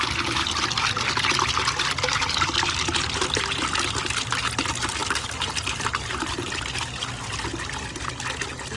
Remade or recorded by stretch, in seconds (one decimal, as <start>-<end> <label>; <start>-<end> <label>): 0.0-8.8 recorded